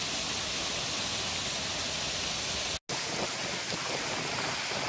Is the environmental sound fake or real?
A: real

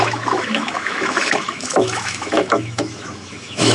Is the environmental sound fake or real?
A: fake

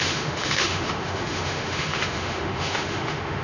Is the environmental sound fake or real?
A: fake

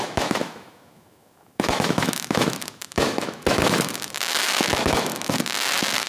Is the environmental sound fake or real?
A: fake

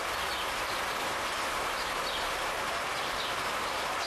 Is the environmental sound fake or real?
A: real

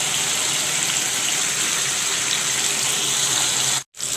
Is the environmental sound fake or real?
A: real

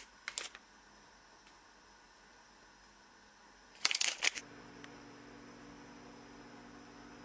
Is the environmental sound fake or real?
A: real